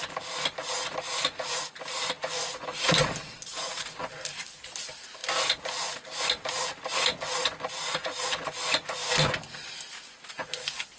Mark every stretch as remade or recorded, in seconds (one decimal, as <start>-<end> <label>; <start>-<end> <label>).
0.0-2.7 recorded; 2.7-4.7 remade; 4.7-11.0 recorded